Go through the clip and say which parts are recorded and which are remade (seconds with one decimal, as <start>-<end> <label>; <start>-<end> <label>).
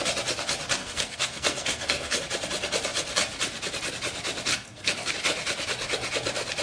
0.0-0.8 recorded; 0.8-2.2 remade; 2.2-4.5 recorded; 4.5-5.1 remade; 5.1-6.6 recorded